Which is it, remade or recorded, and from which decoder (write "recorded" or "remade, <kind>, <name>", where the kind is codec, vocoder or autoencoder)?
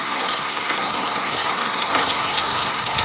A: remade, codec, SNAC